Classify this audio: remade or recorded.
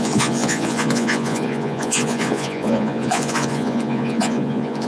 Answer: remade